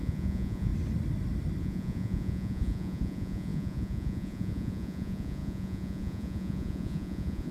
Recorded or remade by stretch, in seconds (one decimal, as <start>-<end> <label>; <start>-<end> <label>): 0.0-0.7 remade; 0.7-1.6 recorded; 1.6-7.5 remade

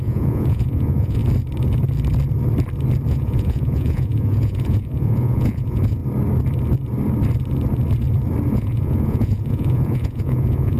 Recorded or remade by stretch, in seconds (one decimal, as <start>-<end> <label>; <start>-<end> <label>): 0.0-1.2 remade; 1.2-3.1 recorded; 3.1-6.0 remade; 6.0-8.5 recorded; 8.5-10.8 remade

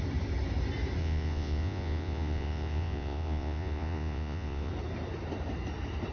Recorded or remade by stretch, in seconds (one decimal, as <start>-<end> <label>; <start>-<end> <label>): 0.0-1.0 recorded; 1.0-4.7 remade; 4.7-6.1 recorded

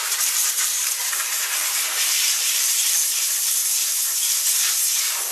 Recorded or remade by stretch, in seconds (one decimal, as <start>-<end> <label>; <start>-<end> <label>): 0.0-5.3 remade